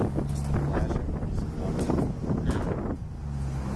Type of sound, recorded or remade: recorded